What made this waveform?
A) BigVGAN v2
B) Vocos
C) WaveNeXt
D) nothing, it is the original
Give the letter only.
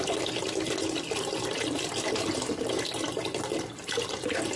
D